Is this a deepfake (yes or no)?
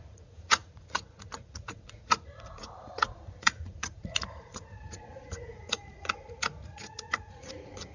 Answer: yes